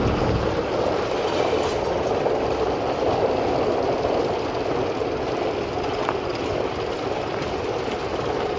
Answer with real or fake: real